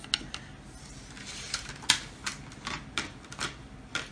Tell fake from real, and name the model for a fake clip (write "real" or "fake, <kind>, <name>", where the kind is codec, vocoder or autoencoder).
real